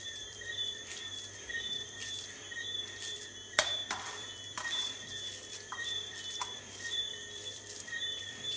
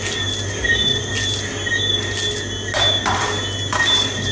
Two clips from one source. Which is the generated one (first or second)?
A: first